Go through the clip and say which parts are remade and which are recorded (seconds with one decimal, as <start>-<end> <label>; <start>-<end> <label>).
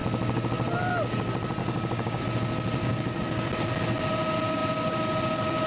0.0-1.6 recorded; 1.6-2.2 remade; 2.2-2.8 recorded; 2.8-3.5 remade; 3.5-5.7 recorded